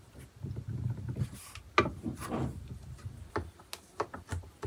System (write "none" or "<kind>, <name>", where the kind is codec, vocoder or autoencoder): none